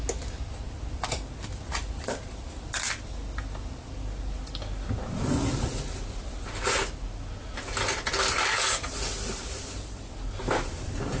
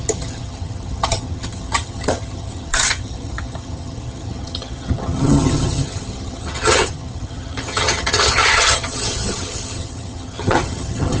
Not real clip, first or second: second